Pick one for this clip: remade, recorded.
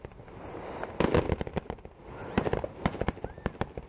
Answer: recorded